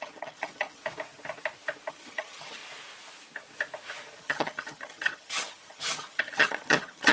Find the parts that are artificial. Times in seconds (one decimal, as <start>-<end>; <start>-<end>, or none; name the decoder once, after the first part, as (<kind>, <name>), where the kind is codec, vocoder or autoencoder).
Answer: 0.0-0.8 (vocoder, HiFi-GAN); 1.9-2.6; 4.2-7.1